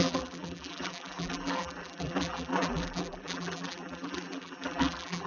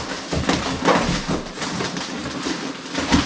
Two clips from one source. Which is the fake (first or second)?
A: first